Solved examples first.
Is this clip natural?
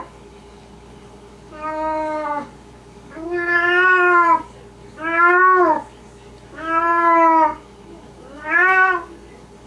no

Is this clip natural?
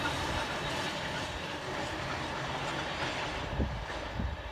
yes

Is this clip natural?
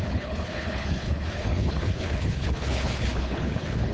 no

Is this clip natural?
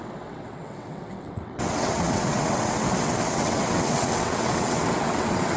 no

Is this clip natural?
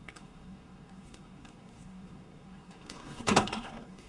no